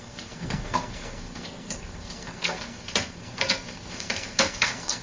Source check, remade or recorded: remade